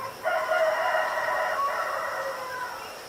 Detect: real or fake fake